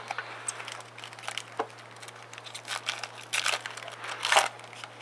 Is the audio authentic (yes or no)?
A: yes